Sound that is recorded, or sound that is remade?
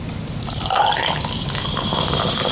recorded